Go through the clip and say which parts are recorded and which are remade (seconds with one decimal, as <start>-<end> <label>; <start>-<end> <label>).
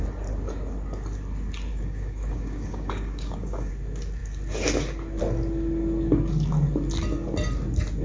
0.0-1.7 recorded; 1.7-3.7 remade; 3.7-8.0 recorded